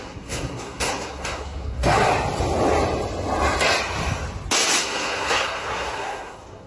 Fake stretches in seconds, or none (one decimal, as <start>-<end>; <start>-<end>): 0.0-2.1; 4.8-6.7